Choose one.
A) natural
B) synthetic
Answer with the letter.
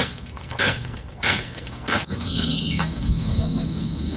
B